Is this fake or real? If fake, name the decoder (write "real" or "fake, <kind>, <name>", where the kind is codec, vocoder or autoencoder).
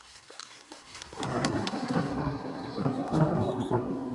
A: fake, codec, SNAC